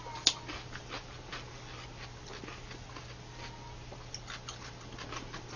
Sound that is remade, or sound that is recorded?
recorded